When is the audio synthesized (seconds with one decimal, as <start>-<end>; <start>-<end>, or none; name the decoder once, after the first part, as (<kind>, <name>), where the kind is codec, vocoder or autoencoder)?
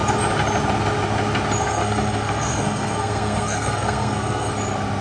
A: 1.6-4.5 (codec, SNAC)